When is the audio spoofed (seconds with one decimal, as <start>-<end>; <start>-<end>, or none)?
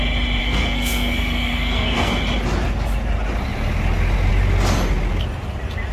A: 0.4-2.1